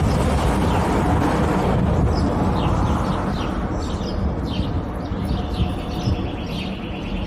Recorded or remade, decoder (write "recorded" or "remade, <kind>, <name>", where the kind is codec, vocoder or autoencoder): recorded